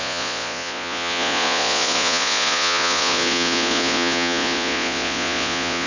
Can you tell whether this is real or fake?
fake